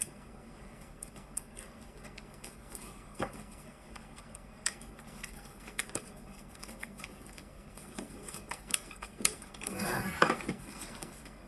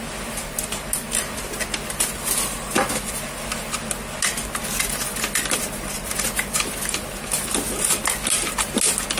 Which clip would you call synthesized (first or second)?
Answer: first